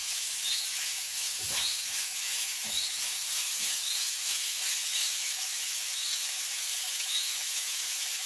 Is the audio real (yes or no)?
no